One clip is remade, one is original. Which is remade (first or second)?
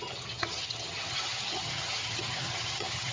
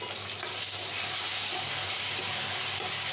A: first